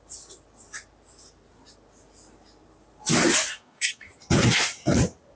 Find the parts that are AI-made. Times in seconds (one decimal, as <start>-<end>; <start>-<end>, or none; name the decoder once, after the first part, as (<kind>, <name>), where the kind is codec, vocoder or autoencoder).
3.5-4.1 (codec, DAC)